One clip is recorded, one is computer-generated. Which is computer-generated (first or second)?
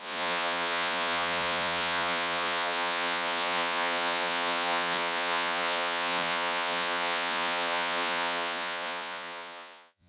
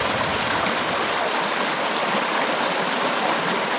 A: first